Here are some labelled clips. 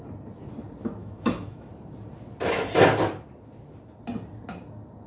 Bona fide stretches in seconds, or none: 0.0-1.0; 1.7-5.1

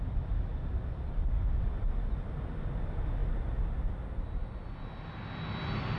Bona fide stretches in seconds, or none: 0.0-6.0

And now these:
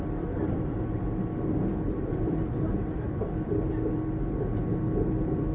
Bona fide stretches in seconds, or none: 0.0-1.7; 2.4-3.2; 3.7-5.5

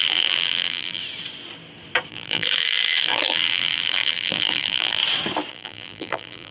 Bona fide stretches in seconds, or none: 1.0-2.1; 5.0-5.5